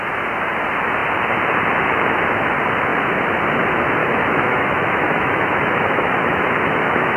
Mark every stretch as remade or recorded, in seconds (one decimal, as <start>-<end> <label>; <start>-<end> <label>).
0.0-4.0 recorded; 4.0-7.2 remade